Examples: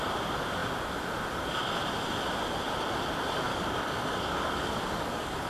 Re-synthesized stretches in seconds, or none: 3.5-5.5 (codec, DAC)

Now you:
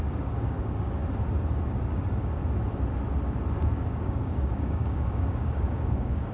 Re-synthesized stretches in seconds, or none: 0.0-1.0 (codec, DAC); 1.8-2.4; 3.5-6.3

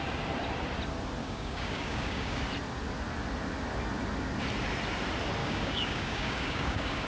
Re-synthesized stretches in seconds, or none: 1.2-2.4 (codec, DAC); 5.4-7.1

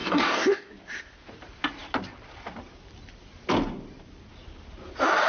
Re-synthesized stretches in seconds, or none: 0.0-0.7 (codec, DAC)

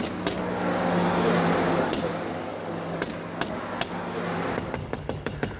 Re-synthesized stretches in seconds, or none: 2.5-3.0 (codec, DAC); 4.8-5.6

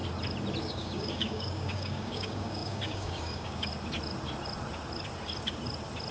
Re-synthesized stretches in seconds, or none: 0.6-3.7 (codec, DAC)

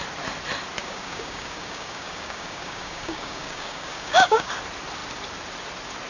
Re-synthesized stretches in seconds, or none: 0.8-4.5 (codec, DAC)